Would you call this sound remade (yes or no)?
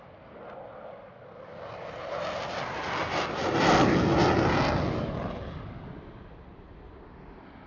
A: no